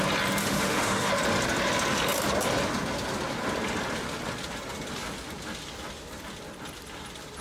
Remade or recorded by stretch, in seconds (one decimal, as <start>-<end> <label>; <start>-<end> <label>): 0.0-0.4 recorded; 0.4-1.1 remade; 1.1-7.4 recorded